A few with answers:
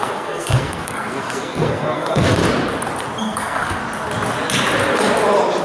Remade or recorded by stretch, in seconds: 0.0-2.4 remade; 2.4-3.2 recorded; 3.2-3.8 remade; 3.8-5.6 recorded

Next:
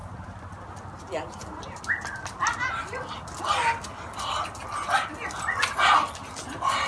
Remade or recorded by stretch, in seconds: 0.0-6.9 recorded